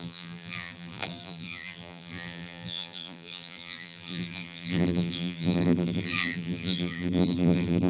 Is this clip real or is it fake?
fake